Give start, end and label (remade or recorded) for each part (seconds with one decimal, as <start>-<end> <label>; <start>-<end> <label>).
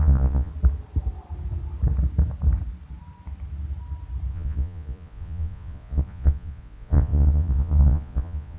0.0-0.5 remade; 0.5-4.3 recorded; 4.3-8.6 remade